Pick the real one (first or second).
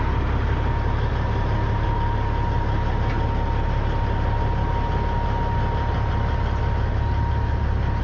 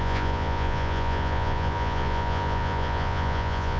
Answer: first